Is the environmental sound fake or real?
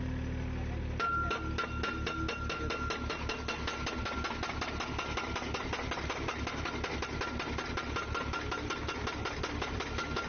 real